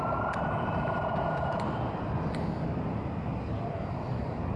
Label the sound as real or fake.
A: real